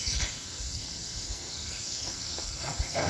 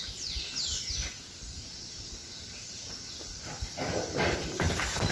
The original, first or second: second